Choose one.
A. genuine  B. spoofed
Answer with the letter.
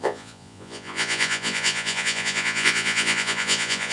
B